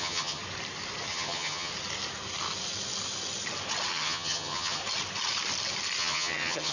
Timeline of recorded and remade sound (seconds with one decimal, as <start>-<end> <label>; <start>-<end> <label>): 0.0-0.4 remade; 0.4-1.1 recorded; 1.1-1.7 remade; 1.7-3.9 recorded; 3.9-4.8 remade; 4.8-6.0 recorded; 6.0-6.7 remade